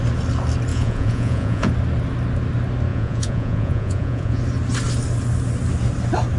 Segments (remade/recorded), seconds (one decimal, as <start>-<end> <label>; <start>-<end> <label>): 0.0-0.7 recorded; 0.7-1.7 remade; 1.7-2.9 recorded; 2.9-4.4 remade; 4.4-6.4 recorded